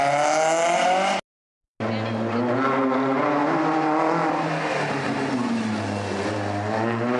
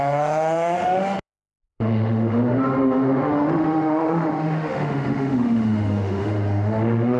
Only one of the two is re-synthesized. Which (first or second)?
second